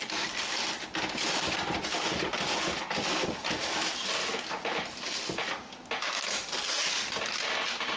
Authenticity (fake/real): real